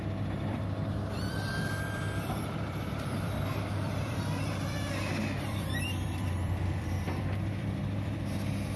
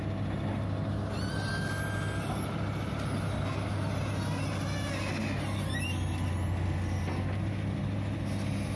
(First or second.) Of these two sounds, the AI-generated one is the first